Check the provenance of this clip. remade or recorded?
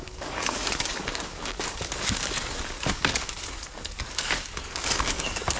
remade